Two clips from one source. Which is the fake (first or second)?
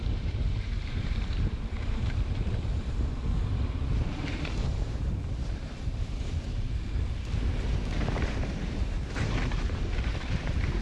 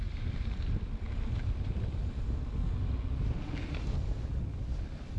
first